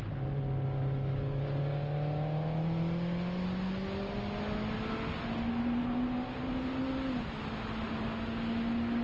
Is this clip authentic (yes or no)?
yes